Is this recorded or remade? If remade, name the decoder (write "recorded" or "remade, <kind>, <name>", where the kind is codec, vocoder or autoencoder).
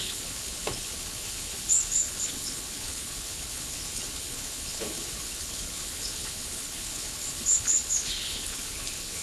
remade, codec, HILCodec